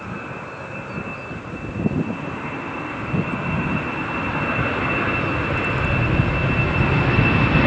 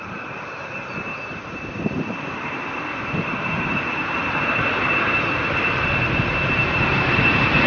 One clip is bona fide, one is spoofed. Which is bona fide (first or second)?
first